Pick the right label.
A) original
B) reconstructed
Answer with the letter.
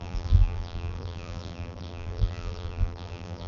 B